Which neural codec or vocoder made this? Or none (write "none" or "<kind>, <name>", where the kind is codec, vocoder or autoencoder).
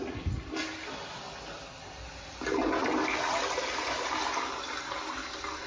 none